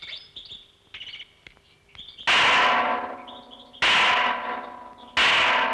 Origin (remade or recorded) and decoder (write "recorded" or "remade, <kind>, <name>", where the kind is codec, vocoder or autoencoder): recorded